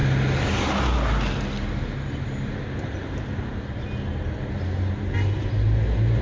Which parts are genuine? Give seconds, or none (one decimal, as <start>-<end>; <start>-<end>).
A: 0.0-6.2